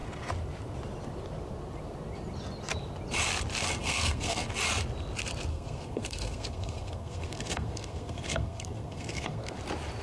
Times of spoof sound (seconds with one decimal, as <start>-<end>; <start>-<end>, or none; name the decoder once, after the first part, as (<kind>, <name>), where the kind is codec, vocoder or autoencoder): 3.8-4.4 (codec, SNAC); 5.5-9.6